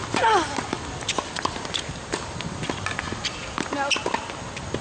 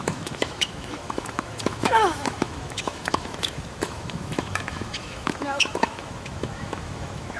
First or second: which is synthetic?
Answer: second